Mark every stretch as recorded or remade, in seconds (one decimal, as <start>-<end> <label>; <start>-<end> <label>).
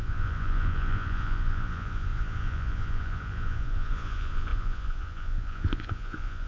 0.0-6.5 remade